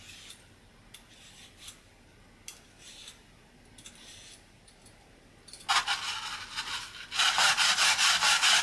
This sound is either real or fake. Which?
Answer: real